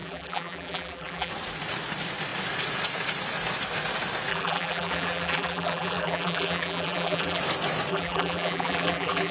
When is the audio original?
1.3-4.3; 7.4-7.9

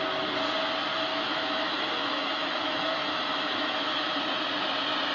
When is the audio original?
0.0-1.1; 4.2-5.1

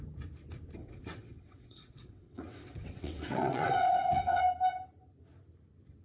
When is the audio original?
0.0-0.8; 4.4-6.0

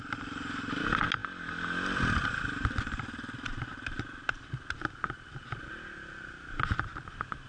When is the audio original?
0.0-7.5